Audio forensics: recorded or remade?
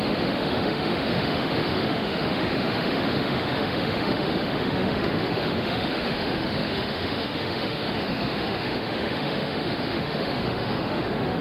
remade